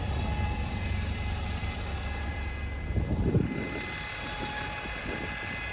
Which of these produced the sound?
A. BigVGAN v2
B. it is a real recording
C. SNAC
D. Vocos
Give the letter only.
B